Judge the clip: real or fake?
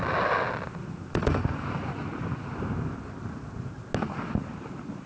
real